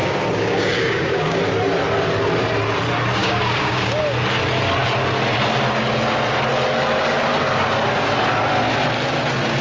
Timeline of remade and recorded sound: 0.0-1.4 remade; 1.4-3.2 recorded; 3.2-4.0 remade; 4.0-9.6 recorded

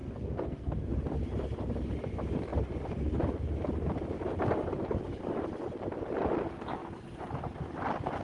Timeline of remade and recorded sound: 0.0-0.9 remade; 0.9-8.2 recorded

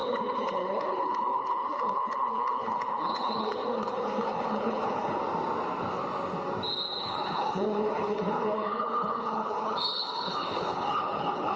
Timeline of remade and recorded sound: 0.0-5.2 remade; 5.2-7.0 recorded; 7.0-11.6 remade